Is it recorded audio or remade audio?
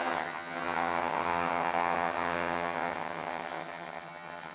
remade